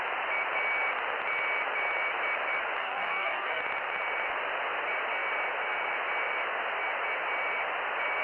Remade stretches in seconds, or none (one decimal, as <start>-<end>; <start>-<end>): 2.8-3.6